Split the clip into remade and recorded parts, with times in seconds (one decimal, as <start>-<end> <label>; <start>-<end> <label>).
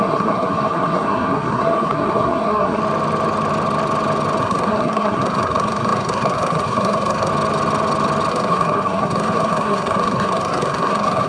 0.0-2.8 remade; 2.8-4.4 recorded; 4.4-7.3 remade; 7.3-8.3 recorded; 8.3-11.3 remade